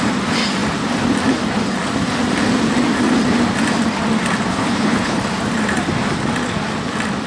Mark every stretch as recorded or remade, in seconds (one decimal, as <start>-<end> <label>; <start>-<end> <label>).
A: 0.0-4.5 recorded; 4.5-5.2 remade; 5.2-7.3 recorded